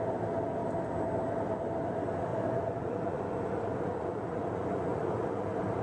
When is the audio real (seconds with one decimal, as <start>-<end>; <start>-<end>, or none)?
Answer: 0.0-2.3